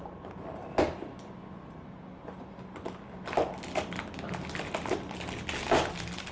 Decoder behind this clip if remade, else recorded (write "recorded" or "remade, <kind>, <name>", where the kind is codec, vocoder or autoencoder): recorded